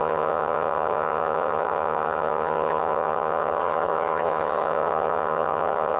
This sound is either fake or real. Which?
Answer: fake